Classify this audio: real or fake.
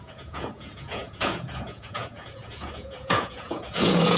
fake